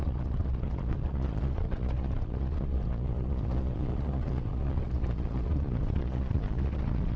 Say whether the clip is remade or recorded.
remade